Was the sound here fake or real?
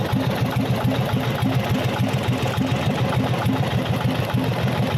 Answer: real